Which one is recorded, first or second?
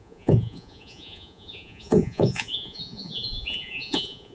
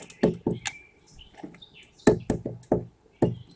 second